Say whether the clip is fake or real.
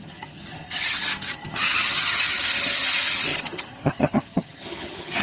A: fake